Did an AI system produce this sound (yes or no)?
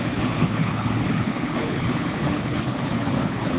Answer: yes